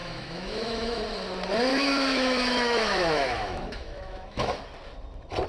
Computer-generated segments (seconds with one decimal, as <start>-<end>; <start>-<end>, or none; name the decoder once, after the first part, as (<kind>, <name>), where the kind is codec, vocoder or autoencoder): 0.0-1.0 (autoencoder, DAC-VAE); 1.7-4.6